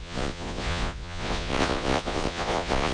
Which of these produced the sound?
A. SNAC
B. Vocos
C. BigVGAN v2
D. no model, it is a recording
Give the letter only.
B